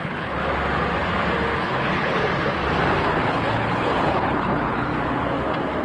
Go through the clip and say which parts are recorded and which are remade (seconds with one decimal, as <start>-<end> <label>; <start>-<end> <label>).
0.0-0.4 remade; 0.4-1.6 recorded; 1.6-2.2 remade; 2.2-3.0 recorded; 3.0-4.9 remade; 4.9-5.8 recorded